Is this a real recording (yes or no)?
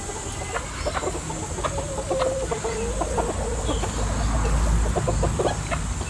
yes